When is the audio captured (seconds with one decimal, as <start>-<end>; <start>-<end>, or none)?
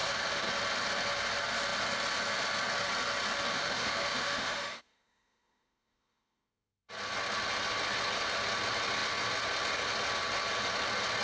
0.5-3.5; 6.9-11.2